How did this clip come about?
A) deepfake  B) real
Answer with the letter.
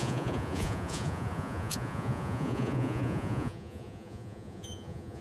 A